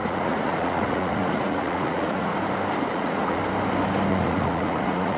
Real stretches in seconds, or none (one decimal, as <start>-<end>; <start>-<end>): 2.3-2.9; 3.4-4.1